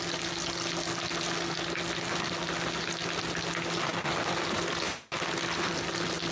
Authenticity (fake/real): real